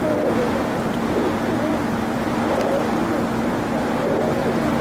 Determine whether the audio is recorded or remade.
recorded